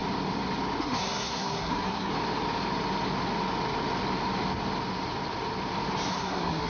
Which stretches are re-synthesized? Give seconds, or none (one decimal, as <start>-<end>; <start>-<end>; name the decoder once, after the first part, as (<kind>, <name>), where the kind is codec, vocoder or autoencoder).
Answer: 0.8-2.1 (codec, SNAC); 6.1-6.7